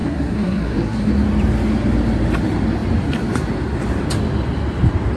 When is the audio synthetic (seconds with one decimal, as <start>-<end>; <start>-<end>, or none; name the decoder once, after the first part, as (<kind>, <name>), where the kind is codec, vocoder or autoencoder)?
0.0-1.1 (codec, SNAC)